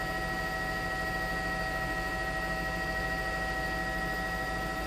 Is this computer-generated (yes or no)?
no